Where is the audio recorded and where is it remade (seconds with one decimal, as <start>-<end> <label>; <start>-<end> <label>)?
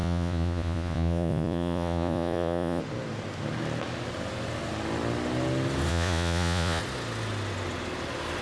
0.0-2.8 remade; 2.8-5.9 recorded; 5.9-6.8 remade; 6.8-8.4 recorded